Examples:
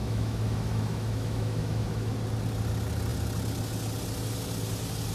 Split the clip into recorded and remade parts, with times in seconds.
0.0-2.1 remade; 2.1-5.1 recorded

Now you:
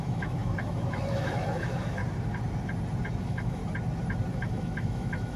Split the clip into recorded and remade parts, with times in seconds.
0.0-2.0 remade; 2.0-3.2 recorded; 3.2-3.6 remade; 3.6-4.3 recorded; 4.3-5.4 remade